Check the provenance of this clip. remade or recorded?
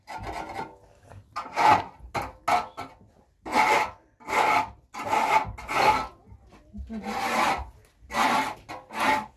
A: recorded